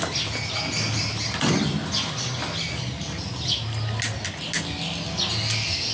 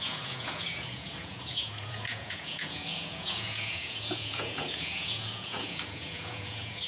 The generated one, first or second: second